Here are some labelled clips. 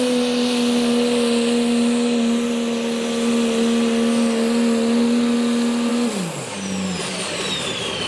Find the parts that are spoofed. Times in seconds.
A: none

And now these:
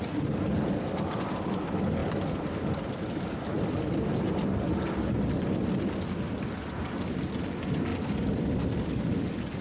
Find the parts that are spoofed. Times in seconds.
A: 7.9-9.1 (vocoder, BigVGAN v2)

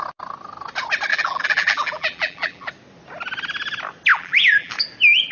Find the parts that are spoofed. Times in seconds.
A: 1.1-2.7 (vocoder, BigVGAN v2); 4.1-4.7

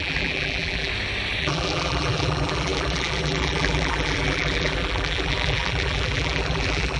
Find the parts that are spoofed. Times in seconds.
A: 0.0-0.9 (vocoder, BigVGAN v2); 1.4-7.0

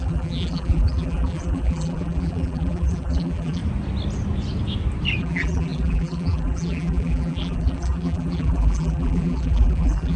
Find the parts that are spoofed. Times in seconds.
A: 0.0-3.6 (vocoder, BigVGAN v2); 5.2-10.2

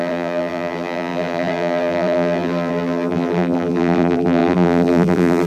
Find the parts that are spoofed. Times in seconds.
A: 0.0-5.5 (vocoder, BigVGAN v2)